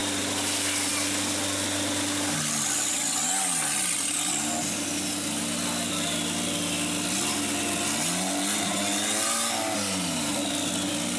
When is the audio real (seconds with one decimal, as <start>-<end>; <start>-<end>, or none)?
0.0-11.2